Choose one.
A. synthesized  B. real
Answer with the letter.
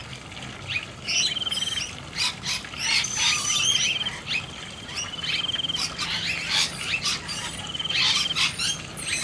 B